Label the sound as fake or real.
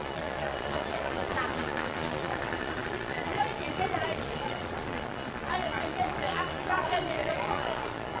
fake